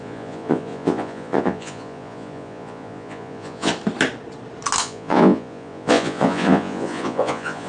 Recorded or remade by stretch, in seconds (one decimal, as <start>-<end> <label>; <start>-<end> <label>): 0.0-3.7 remade; 3.7-4.8 recorded; 4.8-7.7 remade